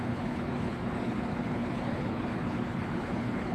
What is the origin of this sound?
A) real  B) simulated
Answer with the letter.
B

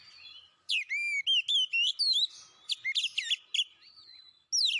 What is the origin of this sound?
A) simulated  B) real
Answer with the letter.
B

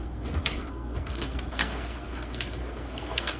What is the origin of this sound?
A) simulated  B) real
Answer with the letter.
A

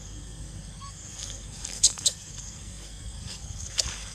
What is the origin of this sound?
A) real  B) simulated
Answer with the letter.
B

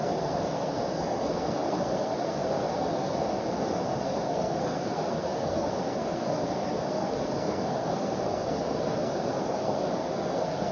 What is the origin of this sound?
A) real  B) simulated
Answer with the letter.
B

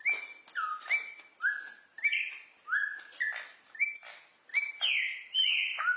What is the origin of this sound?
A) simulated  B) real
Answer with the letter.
B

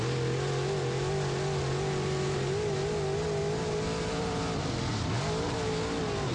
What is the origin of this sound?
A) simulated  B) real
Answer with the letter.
B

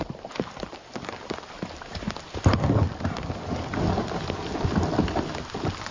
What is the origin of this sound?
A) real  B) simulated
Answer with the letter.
A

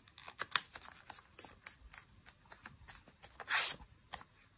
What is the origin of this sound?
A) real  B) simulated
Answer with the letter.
A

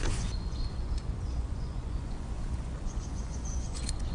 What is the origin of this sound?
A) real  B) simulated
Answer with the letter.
B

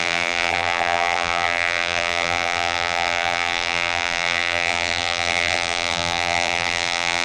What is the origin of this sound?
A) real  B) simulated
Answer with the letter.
B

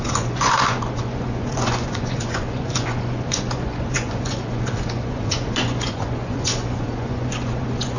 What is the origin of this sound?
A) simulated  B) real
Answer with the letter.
A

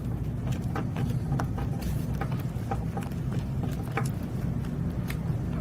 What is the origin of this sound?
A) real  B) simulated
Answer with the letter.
A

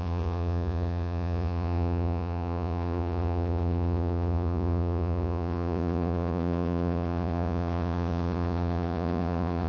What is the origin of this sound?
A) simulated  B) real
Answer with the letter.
A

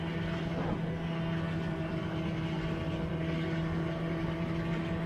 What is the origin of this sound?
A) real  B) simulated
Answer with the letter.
A